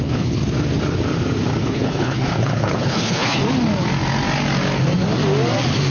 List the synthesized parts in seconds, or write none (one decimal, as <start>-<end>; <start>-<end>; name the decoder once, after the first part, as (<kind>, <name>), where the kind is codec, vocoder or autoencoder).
0.0-0.4 (codec, HILCodec); 1.6-3.4